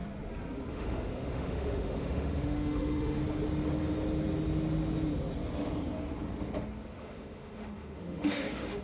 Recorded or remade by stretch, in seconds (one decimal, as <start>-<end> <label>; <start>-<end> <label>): 0.0-0.7 recorded; 0.7-3.2 remade; 3.2-7.0 recorded; 7.0-8.8 remade